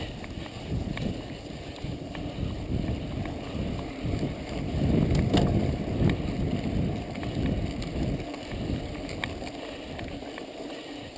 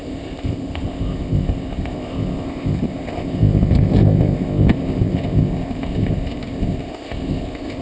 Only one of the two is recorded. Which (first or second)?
first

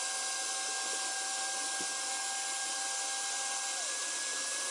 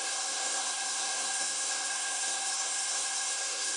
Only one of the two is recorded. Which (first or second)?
first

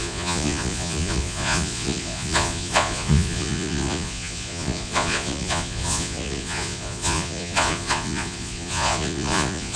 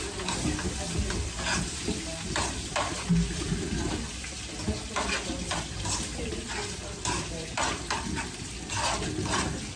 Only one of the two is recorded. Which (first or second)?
second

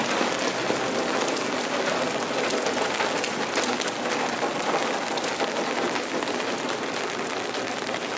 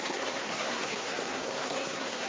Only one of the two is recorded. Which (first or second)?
first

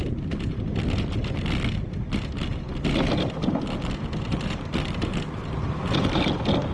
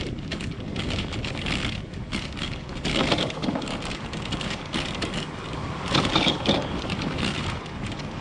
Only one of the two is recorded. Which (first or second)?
first